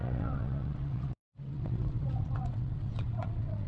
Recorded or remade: remade